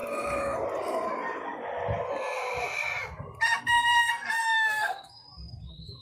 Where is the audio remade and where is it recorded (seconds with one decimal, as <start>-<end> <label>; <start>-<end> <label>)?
0.0-3.6 recorded; 3.6-6.0 remade